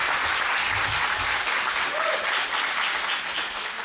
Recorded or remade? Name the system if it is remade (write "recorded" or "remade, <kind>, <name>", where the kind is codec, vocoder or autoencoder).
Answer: recorded